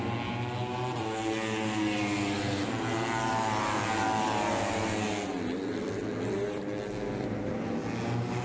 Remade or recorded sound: recorded